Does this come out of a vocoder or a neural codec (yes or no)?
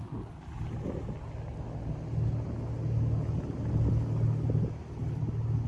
no